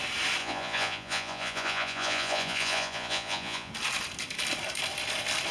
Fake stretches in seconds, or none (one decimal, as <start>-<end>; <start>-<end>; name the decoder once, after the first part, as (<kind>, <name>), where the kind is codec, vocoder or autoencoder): 0.4-3.7 (vocoder, Vocos)